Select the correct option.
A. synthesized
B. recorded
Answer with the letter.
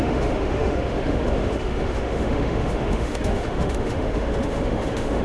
A